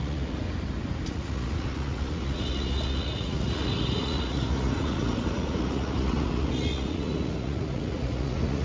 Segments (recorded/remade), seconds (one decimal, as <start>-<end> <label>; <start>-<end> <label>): 0.0-0.4 remade; 0.4-1.1 recorded; 1.1-8.6 remade

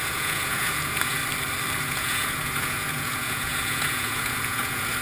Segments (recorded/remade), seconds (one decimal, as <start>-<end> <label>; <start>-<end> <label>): 0.0-1.2 remade; 1.2-1.8 recorded; 1.8-5.0 remade

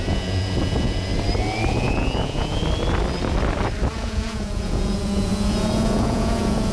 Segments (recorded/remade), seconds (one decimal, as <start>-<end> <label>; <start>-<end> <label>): 0.0-1.1 remade; 1.1-1.7 recorded; 1.7-2.6 remade; 2.6-3.9 recorded; 3.9-6.7 remade